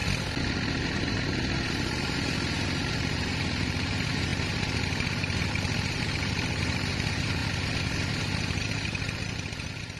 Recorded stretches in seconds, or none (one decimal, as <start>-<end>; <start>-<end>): 0.0-0.7; 7.4-8.2